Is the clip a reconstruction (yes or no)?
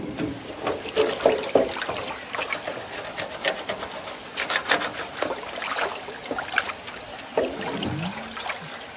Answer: no